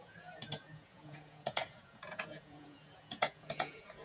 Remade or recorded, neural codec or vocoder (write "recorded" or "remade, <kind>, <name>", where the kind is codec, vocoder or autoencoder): remade, vocoder, Vocos